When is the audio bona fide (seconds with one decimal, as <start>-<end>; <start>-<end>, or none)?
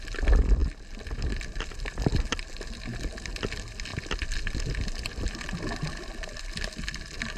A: 0.0-7.4